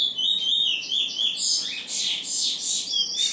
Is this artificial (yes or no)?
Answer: no